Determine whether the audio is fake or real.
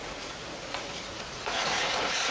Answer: fake